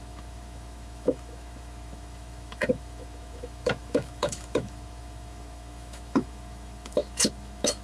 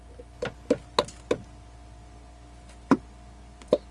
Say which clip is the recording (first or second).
second